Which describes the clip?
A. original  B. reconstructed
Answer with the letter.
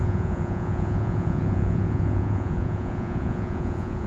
B